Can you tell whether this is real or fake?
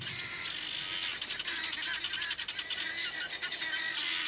real